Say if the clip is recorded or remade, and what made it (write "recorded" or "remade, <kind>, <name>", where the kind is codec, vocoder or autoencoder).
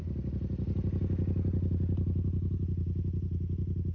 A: recorded